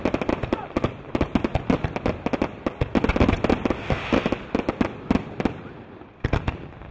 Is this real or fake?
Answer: real